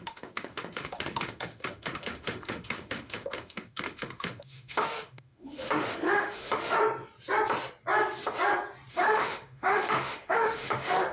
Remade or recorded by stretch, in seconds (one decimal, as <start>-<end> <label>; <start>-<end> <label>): 0.0-6.8 remade; 6.8-8.9 recorded; 8.9-11.1 remade